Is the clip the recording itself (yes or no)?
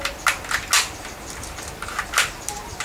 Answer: yes